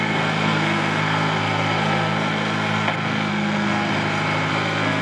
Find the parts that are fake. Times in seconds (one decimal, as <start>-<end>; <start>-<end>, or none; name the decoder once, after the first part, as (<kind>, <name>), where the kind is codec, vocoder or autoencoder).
0.0-3.9 (codec, SNAC); 4.5-5.0